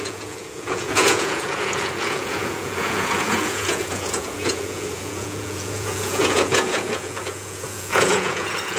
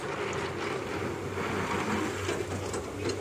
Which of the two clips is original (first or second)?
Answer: second